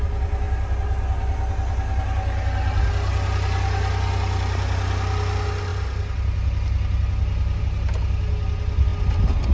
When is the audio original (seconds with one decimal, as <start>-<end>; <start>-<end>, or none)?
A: 0.0-9.5